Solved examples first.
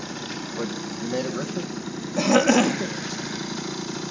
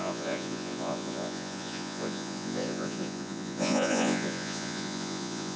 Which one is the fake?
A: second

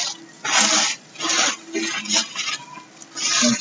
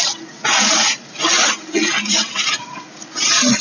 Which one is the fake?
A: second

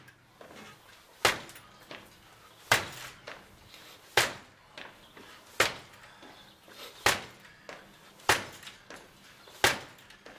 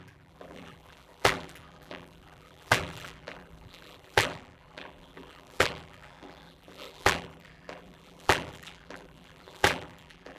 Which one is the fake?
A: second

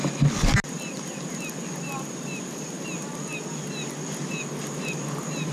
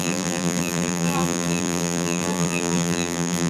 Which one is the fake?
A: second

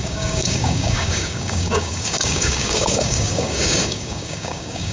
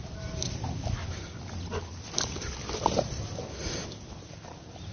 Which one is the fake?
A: first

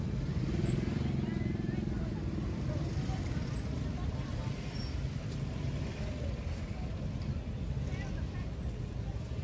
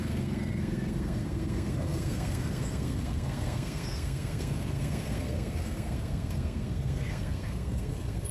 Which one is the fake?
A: second